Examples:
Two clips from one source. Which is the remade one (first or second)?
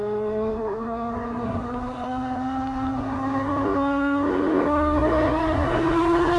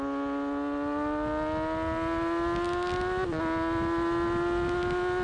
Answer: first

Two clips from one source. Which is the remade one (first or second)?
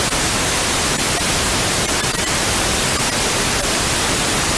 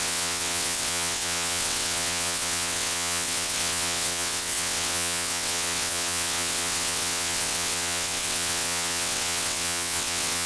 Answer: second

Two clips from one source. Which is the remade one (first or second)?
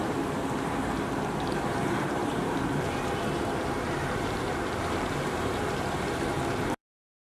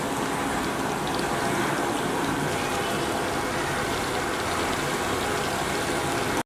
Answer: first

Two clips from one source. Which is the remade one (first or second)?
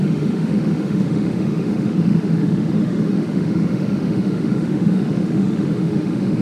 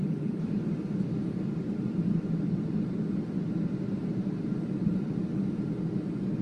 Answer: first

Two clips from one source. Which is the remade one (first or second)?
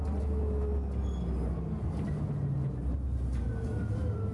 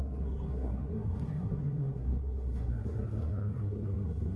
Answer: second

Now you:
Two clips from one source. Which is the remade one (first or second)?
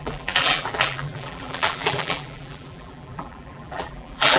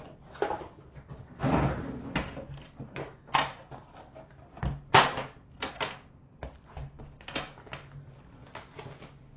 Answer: first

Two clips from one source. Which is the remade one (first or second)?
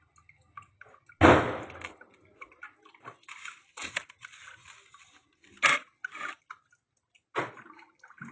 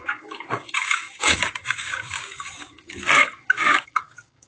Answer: second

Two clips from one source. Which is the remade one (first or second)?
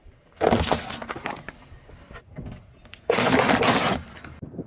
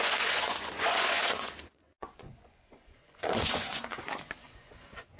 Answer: second